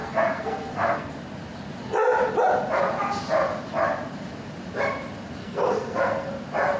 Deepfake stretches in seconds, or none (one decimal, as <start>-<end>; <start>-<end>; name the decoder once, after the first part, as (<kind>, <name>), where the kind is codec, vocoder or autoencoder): 0.0-1.1 (codec, SNAC); 5.4-6.3